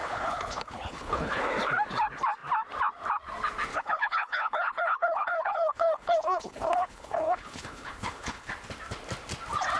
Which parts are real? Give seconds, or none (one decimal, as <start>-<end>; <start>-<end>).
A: 1.4-3.7; 8.5-9.8